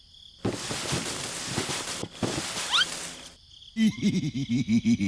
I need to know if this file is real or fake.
real